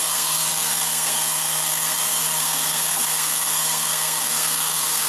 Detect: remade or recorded remade